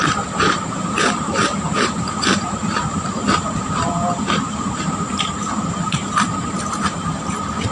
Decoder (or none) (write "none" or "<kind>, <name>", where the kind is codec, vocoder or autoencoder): vocoder, BigVGAN v2